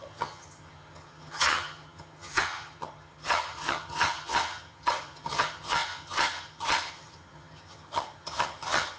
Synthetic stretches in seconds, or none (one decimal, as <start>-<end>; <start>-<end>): 0.0-9.0